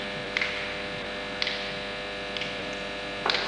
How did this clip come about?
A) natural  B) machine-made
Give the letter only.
A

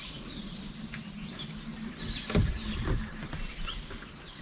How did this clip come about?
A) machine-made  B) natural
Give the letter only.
B